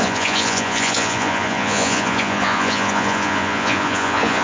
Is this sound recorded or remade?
remade